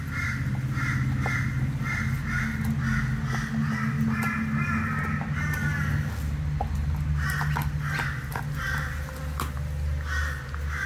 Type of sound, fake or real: real